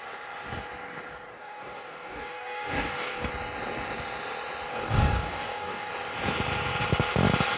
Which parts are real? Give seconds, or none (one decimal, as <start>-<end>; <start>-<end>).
0.0-1.3; 3.3-4.7; 5.9-7.6